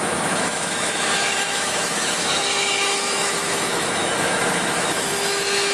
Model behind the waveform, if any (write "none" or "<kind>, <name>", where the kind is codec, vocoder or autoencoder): autoencoder, DAC-VAE